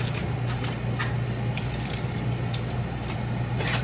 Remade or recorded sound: recorded